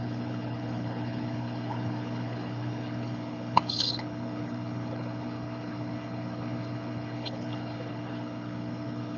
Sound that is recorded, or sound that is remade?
remade